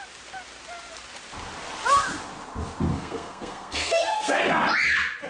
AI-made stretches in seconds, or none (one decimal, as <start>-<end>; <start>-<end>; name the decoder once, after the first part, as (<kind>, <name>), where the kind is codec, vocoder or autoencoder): 2.9-4.4 (codec, SNAC)